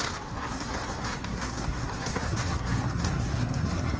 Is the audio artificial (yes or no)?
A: yes